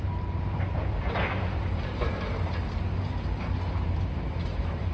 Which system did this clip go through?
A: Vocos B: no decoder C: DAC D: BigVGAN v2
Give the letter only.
D